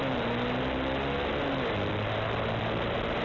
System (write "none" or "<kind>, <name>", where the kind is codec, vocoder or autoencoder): none